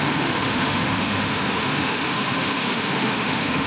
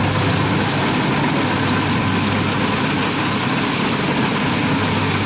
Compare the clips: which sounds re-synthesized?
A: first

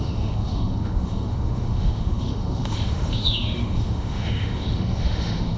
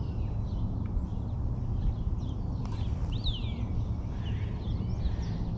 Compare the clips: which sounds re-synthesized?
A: first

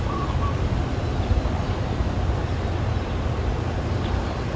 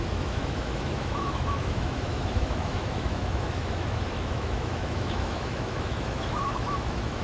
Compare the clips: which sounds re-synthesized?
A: second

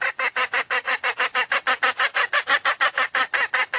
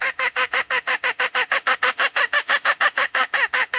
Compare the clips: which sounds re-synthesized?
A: second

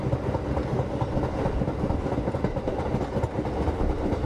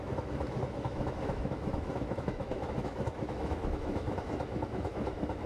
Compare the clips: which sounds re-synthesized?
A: second